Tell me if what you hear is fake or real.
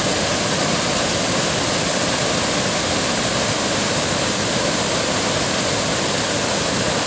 real